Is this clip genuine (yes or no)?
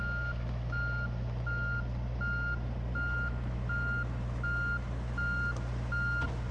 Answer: yes